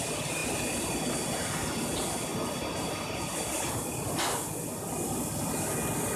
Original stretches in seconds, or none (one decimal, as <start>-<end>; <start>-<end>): 0.0-6.2